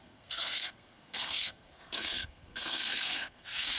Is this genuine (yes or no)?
no